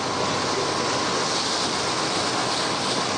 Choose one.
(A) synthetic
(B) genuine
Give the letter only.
B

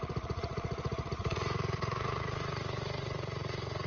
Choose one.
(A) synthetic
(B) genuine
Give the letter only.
A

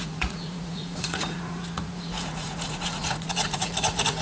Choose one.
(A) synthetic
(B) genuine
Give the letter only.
A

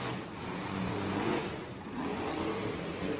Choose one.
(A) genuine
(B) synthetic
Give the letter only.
B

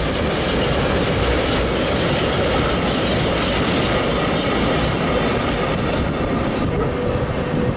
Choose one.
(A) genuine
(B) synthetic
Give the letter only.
A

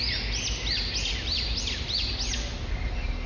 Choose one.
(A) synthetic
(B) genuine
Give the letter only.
B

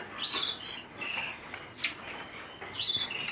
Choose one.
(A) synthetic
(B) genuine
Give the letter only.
B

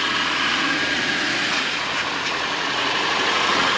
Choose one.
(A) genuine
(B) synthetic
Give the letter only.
B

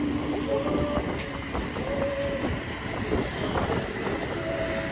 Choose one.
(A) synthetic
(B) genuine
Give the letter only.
B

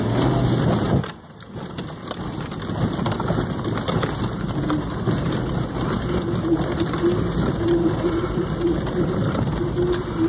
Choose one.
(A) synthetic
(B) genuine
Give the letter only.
B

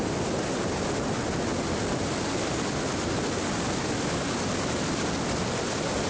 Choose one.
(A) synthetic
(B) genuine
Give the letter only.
B